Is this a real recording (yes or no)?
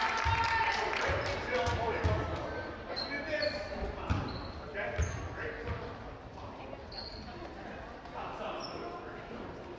yes